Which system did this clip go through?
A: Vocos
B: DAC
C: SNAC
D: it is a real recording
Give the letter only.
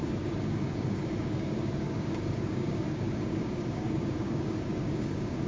B